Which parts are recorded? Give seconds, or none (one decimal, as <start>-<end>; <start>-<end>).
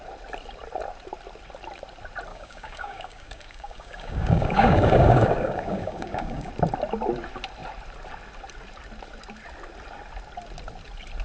0.0-2.3; 6.5-11.2